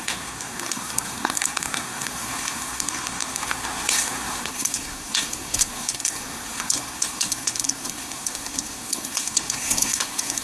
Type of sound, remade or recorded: remade